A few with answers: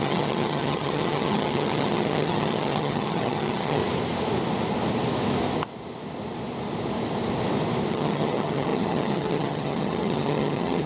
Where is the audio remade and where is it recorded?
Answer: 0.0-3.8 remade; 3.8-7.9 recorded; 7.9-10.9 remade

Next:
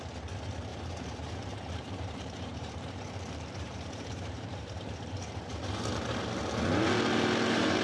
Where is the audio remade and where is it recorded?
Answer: 0.0-0.7 recorded; 0.7-5.3 remade; 5.3-7.8 recorded

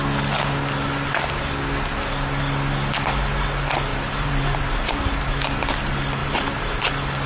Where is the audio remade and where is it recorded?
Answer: 0.0-3.9 recorded; 3.9-5.0 remade; 5.0-6.2 recorded; 6.2-6.8 remade; 6.8-7.3 recorded